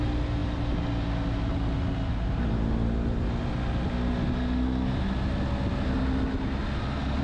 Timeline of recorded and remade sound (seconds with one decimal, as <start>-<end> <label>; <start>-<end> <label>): 0.0-7.2 recorded